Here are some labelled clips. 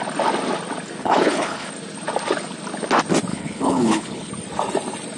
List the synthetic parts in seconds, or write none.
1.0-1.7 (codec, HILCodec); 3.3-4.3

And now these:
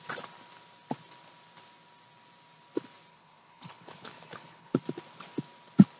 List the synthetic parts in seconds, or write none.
3.1-4.8 (codec, HILCodec)

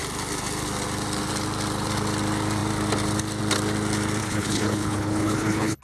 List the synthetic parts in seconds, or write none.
4.2-5.8 (codec, HILCodec)

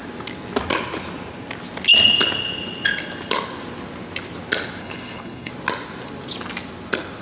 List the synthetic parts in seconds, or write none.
4.8-5.5 (codec, HILCodec)

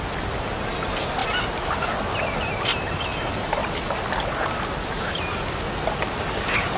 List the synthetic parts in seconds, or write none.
none

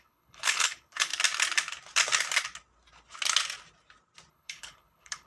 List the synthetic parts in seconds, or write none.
0.0-1.1 (codec, HILCodec); 4.3-5.3